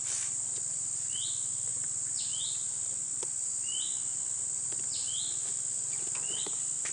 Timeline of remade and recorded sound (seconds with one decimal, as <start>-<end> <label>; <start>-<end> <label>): 0.0-6.9 recorded

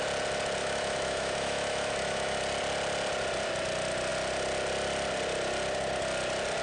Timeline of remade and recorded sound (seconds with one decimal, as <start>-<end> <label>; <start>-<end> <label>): 0.0-0.6 recorded; 0.6-2.4 remade; 2.4-6.6 recorded